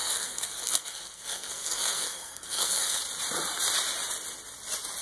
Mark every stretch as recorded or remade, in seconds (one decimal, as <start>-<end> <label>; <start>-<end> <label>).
0.0-3.0 remade; 3.0-5.0 recorded